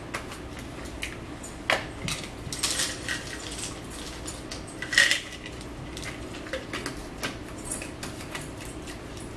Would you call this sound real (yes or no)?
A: yes